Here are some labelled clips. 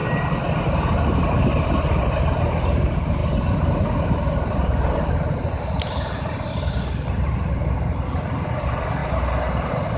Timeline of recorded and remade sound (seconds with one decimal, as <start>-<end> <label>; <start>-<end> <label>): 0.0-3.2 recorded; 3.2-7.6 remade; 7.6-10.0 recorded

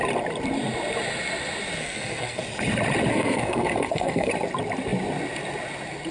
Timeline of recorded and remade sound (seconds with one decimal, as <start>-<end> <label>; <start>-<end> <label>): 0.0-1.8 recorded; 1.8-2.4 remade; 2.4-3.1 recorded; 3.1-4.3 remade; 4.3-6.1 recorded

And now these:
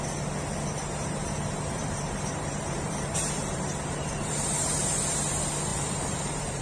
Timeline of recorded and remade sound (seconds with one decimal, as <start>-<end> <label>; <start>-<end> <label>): 0.0-0.8 recorded; 0.8-4.8 remade; 4.8-5.7 recorded; 5.7-6.6 remade

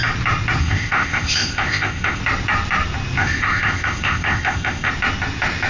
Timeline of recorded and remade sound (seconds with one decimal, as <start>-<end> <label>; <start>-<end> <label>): 0.0-0.6 recorded; 0.6-2.2 remade; 2.2-3.2 recorded; 3.2-4.9 remade; 4.9-5.7 recorded

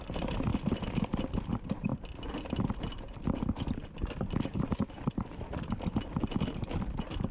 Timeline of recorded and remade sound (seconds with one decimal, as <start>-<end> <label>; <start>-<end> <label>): 0.0-7.3 recorded

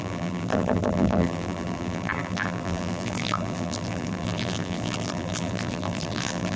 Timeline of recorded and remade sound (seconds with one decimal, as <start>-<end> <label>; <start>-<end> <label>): 0.0-6.6 remade

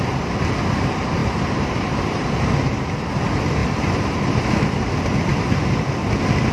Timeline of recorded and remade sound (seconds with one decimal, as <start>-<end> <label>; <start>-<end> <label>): 0.0-1.2 recorded; 1.2-2.5 remade; 2.5-3.6 recorded; 3.6-4.4 remade; 4.4-6.5 recorded